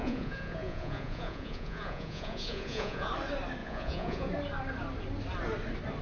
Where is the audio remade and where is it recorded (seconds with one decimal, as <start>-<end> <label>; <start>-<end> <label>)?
0.0-3.1 remade; 3.1-3.6 recorded; 3.6-4.3 remade; 4.3-6.0 recorded